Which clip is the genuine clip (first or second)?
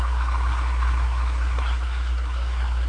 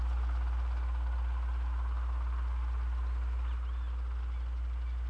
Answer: second